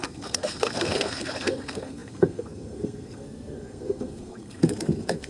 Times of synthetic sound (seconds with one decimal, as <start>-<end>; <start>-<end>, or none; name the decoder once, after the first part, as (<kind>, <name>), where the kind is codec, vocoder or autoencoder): 0.0-5.3 (codec, SNAC)